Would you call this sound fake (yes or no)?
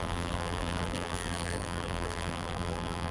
yes